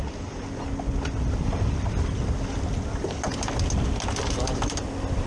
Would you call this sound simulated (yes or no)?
no